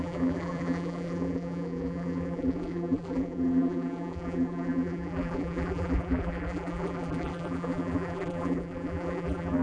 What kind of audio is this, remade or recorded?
remade